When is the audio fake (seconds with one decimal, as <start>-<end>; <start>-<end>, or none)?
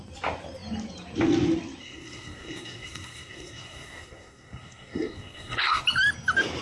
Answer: 1.8-5.8